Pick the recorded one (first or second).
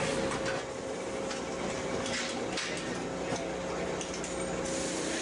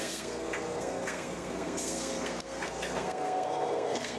first